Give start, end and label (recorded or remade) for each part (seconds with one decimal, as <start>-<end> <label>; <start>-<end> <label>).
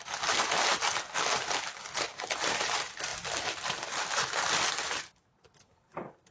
0.0-6.3 recorded